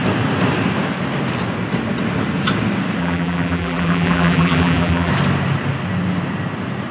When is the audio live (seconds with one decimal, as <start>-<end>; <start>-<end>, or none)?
0.0-3.0; 5.1-6.9